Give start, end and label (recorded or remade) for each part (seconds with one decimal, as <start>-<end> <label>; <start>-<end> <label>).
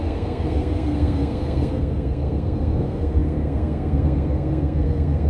0.0-5.3 remade